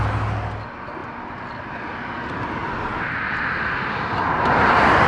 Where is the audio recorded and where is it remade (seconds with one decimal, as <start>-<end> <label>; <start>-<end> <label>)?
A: 0.0-5.1 recorded